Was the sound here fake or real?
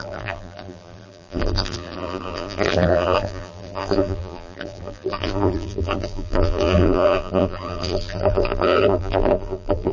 fake